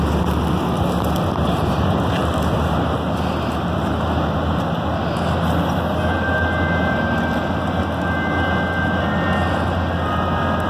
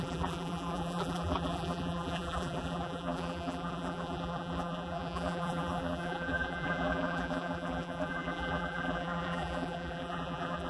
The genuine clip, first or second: first